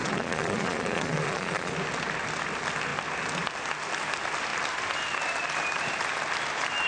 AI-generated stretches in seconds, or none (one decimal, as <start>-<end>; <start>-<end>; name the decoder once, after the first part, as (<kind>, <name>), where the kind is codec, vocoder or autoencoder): 0.0-1.7 (vocoder, Vocos)

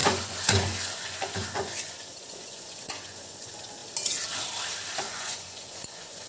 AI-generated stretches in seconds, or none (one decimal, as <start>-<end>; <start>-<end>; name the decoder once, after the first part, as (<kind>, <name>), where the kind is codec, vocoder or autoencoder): 0.0-3.8 (vocoder, Vocos); 5.0-6.3